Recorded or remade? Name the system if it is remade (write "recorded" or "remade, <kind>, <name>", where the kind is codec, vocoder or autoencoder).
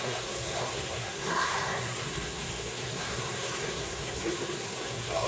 remade, codec, SNAC